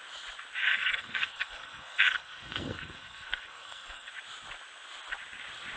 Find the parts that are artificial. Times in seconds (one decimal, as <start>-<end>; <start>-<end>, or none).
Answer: 0.6-4.1